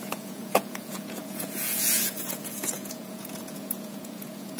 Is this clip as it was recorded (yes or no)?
no